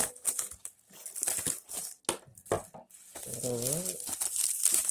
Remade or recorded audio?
recorded